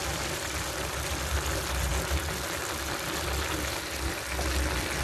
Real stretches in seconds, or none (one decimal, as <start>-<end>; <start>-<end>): 1.3-5.0